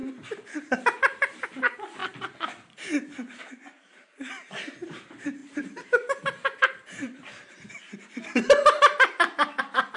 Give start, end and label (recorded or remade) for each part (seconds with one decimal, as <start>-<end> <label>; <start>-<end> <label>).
0.0-0.6 recorded; 0.6-2.0 remade; 2.0-3.5 recorded; 3.5-10.0 remade